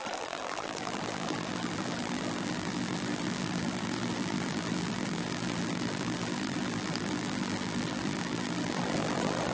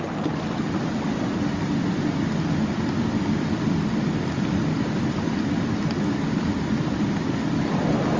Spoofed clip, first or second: first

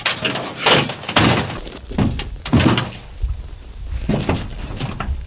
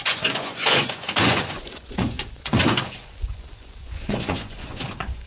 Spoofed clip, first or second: second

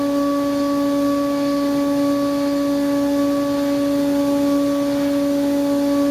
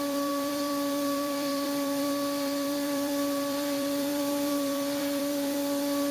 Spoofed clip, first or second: second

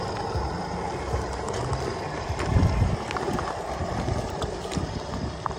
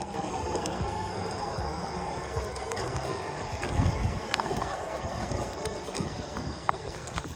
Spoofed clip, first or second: second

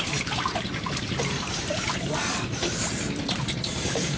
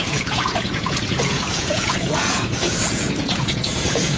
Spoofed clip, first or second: second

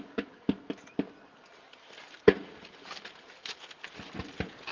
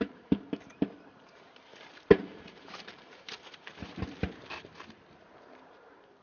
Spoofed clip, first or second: second